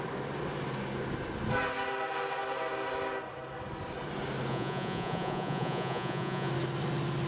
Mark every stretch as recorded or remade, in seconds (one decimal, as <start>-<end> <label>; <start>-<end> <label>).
0.0-4.5 recorded; 4.5-6.5 remade; 6.5-7.3 recorded